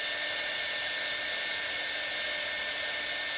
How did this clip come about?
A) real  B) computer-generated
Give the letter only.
A